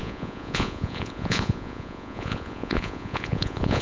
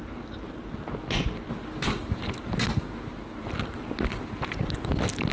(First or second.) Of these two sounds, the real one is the second